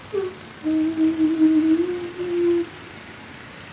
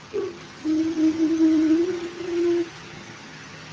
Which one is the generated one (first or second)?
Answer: second